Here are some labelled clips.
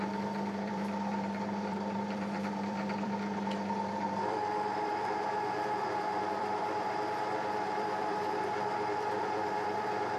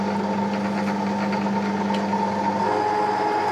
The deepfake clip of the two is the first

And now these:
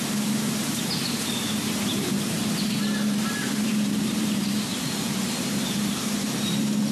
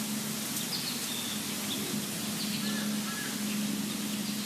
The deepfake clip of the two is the first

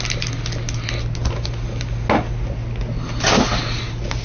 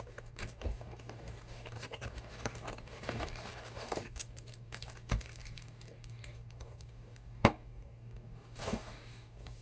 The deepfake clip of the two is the second